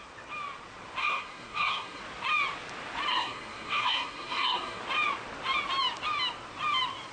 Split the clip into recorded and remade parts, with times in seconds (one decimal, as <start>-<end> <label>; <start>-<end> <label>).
0.0-1.0 recorded; 1.0-2.0 remade; 2.0-3.1 recorded; 3.1-4.8 remade; 4.8-7.1 recorded